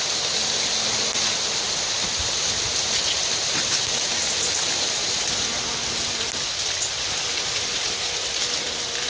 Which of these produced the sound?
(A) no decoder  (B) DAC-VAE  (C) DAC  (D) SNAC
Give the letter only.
A